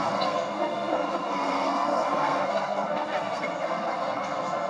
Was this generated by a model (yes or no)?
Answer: yes